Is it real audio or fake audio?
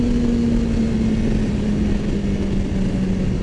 real